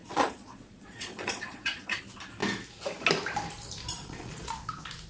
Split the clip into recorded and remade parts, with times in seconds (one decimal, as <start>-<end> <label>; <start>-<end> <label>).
0.0-2.0 remade; 2.0-4.0 recorded; 4.0-4.5 remade; 4.5-5.1 recorded